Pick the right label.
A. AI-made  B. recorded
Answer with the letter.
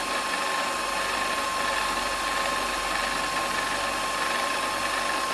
B